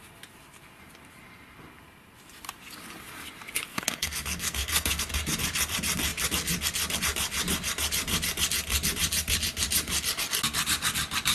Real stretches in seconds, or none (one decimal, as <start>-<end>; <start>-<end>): 0.0-3.7; 5.0-11.3